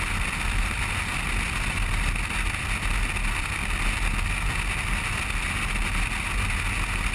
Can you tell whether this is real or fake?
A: real